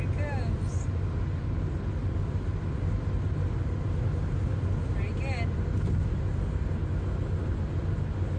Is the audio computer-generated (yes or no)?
no